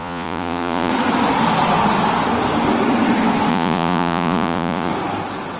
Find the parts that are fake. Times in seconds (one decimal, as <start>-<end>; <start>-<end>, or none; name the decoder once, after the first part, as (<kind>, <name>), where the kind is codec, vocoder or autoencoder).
0.0-0.9 (vocoder, Vocos); 3.5-4.9